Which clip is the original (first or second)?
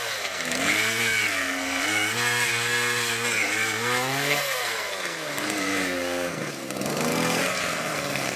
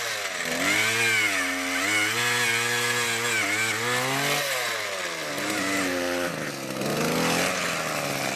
second